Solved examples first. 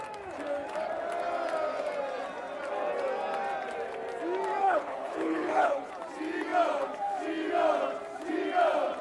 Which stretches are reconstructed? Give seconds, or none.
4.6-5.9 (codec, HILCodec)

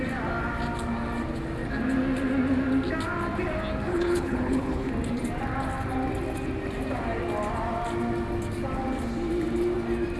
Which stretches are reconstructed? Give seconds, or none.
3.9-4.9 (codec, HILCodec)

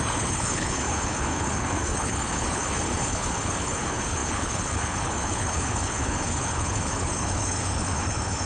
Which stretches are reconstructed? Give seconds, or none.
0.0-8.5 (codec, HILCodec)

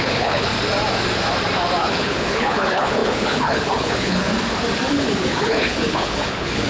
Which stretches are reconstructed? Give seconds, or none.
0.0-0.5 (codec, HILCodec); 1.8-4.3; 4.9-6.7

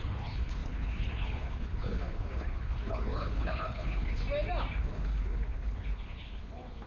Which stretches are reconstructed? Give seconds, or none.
0.0-4.2 (codec, HILCodec); 4.8-6.9

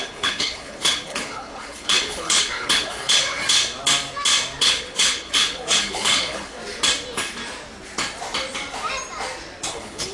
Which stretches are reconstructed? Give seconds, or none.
0.0-3.4 (codec, HILCodec); 4.6-6.6; 9.7-10.1

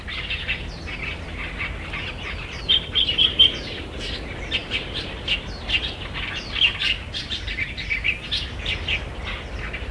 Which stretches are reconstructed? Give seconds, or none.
none

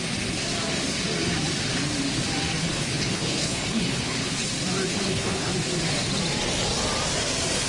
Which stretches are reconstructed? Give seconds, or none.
2.6-4.4 (codec, HILCodec); 4.9-5.5